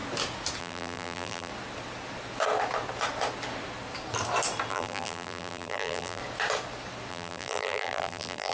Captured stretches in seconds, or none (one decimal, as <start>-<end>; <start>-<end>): 0.0-0.6; 1.5-4.7; 6.2-7.1

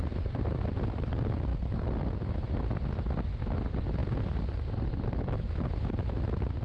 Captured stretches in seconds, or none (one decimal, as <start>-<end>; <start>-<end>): 0.5-6.6

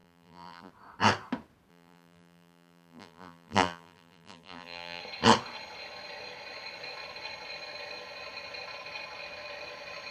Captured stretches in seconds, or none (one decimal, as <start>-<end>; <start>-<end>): 0.7-1.7; 5.0-10.1